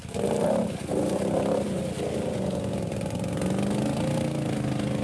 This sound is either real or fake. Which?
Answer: real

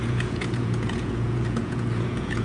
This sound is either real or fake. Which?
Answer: fake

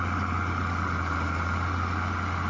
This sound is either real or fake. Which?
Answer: real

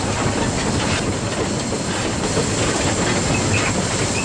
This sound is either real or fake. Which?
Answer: real